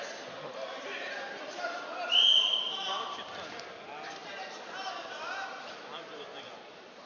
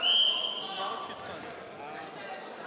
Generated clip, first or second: first